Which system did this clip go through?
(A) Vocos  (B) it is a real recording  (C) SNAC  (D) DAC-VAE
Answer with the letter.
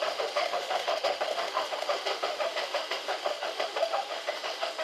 D